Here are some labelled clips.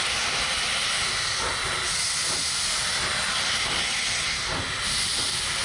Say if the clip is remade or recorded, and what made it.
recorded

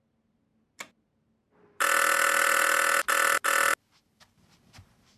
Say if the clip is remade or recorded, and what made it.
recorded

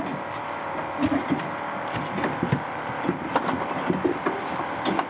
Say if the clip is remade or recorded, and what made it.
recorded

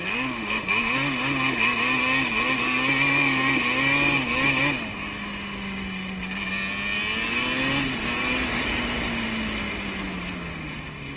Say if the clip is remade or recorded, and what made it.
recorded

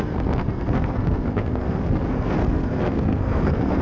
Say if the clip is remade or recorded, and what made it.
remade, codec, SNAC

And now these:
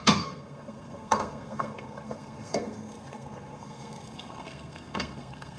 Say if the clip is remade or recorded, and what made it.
remade, codec, SNAC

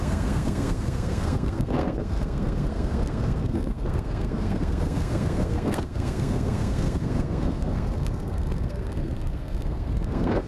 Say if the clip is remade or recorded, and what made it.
remade, codec, SNAC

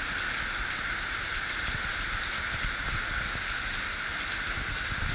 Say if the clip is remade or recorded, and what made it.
recorded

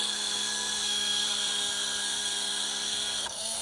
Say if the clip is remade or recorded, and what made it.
remade, codec, SNAC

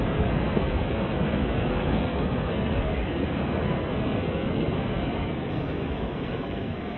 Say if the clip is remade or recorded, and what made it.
remade, codec, SNAC